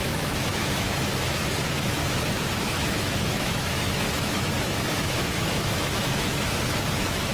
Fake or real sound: fake